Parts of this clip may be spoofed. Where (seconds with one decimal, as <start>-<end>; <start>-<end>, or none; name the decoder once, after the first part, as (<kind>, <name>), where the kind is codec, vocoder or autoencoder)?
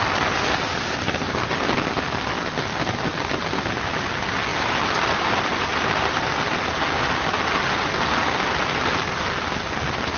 4.5-8.9 (vocoder, BigVGAN v2)